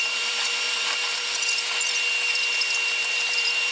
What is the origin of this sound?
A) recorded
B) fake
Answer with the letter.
B